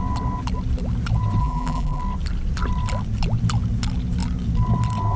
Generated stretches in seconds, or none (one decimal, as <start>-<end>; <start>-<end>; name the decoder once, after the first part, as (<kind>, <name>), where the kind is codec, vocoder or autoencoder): 1.4-2.0 (vocoder, BigVGAN v2)